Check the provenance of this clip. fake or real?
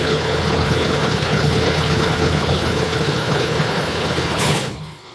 fake